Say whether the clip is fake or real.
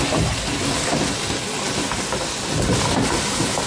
real